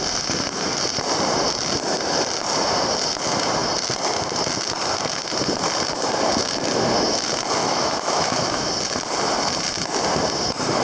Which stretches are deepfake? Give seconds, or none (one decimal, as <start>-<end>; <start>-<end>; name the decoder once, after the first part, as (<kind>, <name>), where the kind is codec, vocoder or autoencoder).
7.6-8.7 (autoencoder, DAC-VAE)